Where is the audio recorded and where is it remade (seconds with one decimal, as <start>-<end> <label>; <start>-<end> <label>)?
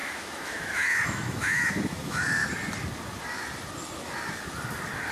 0.0-2.4 remade; 2.4-5.1 recorded